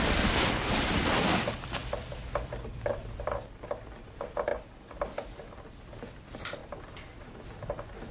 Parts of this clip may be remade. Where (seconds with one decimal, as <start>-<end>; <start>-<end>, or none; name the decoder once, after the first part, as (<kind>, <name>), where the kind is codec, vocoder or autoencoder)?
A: 0.0-4.5 (vocoder, BigVGAN v2); 5.7-6.6